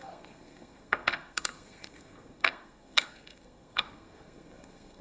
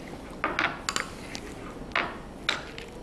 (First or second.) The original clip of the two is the second